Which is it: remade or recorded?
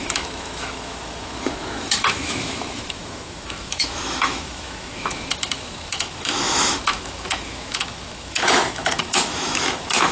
remade